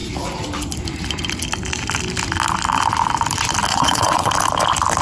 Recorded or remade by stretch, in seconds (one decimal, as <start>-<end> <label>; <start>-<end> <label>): 0.0-3.7 recorded; 3.7-4.3 remade; 4.3-5.0 recorded